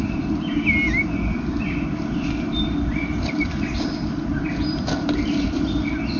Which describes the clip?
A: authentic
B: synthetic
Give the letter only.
A